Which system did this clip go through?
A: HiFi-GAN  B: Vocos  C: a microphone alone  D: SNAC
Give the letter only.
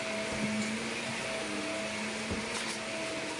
C